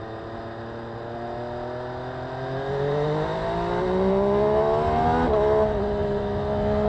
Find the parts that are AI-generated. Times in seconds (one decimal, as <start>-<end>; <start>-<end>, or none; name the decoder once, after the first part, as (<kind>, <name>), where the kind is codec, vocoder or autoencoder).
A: none